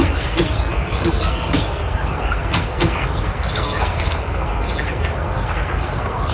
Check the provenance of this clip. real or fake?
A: fake